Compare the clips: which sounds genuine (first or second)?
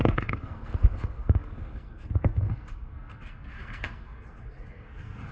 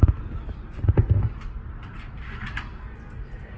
second